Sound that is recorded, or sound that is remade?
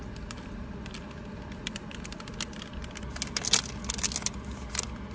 recorded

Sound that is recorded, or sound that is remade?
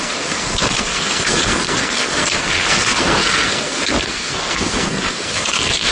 remade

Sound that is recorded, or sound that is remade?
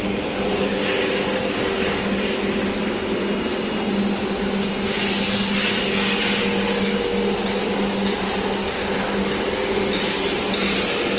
recorded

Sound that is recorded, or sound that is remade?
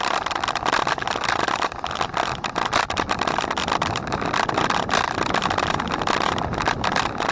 recorded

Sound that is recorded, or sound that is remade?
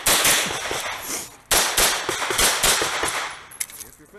recorded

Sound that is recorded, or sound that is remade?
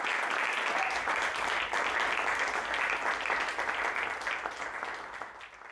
recorded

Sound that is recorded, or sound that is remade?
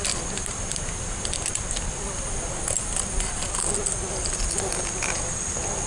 recorded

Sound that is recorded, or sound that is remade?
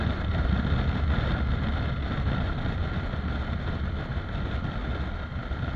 recorded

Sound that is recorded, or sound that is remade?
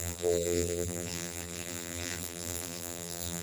remade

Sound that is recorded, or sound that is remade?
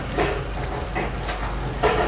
recorded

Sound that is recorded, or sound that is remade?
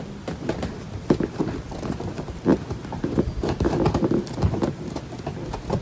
recorded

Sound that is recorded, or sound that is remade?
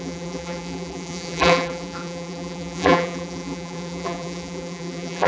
remade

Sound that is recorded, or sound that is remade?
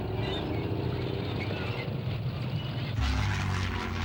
recorded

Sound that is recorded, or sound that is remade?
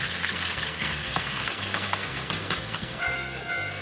remade